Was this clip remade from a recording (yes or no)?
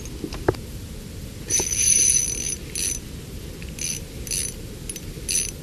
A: no